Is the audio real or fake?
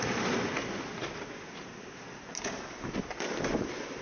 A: real